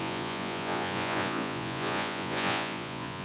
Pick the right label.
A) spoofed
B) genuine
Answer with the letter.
A